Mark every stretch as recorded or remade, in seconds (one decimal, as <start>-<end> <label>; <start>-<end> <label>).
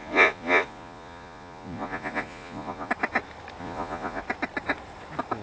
0.0-2.9 remade; 2.9-3.6 recorded; 3.6-4.2 remade; 4.2-5.4 recorded